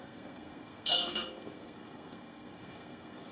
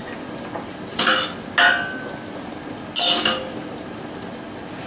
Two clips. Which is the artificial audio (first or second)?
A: first